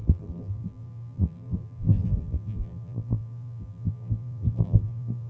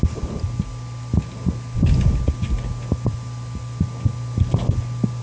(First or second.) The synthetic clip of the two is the first